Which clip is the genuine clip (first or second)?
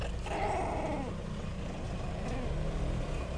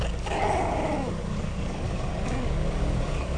first